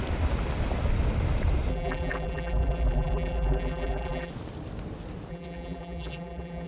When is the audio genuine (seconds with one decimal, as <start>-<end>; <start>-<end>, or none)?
0.0-1.7; 4.3-5.3